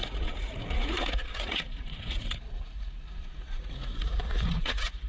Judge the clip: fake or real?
fake